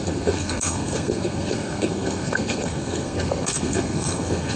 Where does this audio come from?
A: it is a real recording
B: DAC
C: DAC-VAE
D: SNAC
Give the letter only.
D